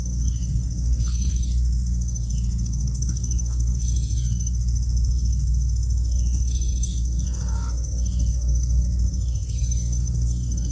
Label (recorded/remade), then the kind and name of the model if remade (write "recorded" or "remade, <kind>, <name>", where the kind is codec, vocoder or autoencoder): remade, codec, SNAC